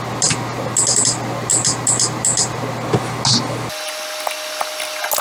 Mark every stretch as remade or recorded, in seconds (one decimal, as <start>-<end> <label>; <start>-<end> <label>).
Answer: 0.0-5.2 recorded